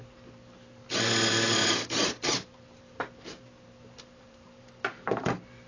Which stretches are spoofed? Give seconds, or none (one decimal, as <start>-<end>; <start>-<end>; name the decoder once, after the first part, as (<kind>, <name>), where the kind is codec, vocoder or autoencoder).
1.6-4.7 (vocoder, BigVGAN v2)